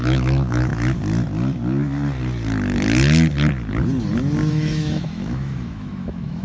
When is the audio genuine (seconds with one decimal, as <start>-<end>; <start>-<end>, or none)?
0.7-4.5